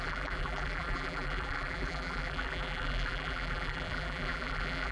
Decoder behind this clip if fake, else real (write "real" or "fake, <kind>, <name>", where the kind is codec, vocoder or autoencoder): fake, vocoder, BigVGAN v2